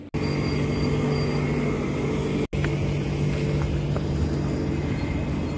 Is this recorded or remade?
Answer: recorded